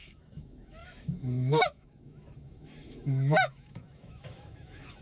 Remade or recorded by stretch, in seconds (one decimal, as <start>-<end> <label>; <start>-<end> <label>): 0.0-5.0 remade